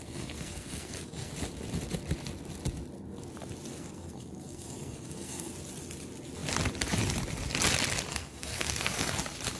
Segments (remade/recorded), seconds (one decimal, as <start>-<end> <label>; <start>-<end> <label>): 0.0-1.3 remade; 1.3-3.7 recorded; 3.7-5.5 remade; 5.5-8.1 recorded; 8.1-9.2 remade; 9.2-9.6 recorded